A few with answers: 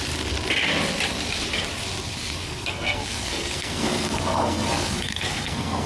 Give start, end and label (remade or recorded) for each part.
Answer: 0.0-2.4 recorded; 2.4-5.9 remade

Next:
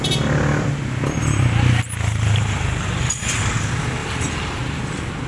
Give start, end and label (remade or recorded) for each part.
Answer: 0.0-2.1 recorded; 2.1-3.5 remade; 3.5-4.0 recorded; 4.0-4.8 remade; 4.8-5.3 recorded

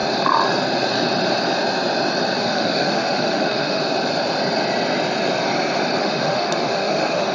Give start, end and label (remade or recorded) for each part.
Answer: 0.0-2.4 recorded; 2.4-3.8 remade; 3.8-6.0 recorded; 6.0-7.3 remade

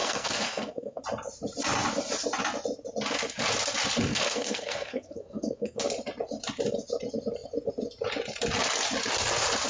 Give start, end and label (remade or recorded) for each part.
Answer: 0.0-1.0 remade; 1.0-4.1 recorded; 4.1-5.8 remade; 5.8-9.7 recorded

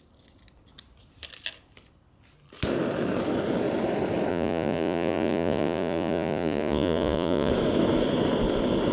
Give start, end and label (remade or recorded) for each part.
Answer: 0.0-4.3 recorded; 4.3-7.5 remade; 7.5-8.9 recorded

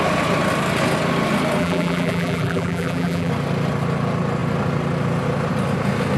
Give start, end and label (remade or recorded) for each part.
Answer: 0.0-1.6 recorded; 1.6-3.3 remade; 3.3-6.2 recorded